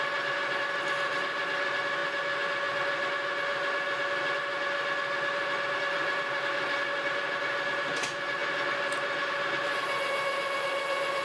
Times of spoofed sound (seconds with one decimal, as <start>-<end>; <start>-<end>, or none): none

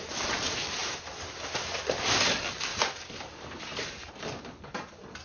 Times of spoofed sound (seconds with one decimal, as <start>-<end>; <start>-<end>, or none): 0.8-1.4; 2.7-4.1

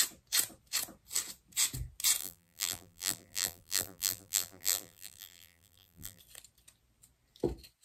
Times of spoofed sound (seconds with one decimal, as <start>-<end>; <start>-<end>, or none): 2.2-6.2

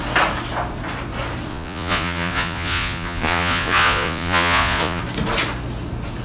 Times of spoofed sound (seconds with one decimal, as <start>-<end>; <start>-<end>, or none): 1.5-5.0